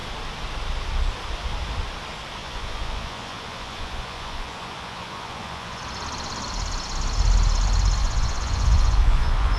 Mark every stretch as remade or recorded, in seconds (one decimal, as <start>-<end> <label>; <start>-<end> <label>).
0.0-2.4 recorded; 2.4-5.8 remade; 5.8-8.0 recorded; 8.0-9.6 remade